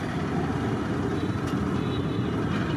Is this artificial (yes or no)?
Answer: no